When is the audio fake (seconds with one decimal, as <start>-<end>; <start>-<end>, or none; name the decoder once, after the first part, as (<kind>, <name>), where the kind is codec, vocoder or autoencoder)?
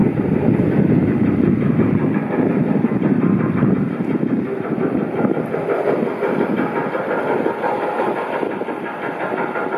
0.0-2.1 (vocoder, BigVGAN v2)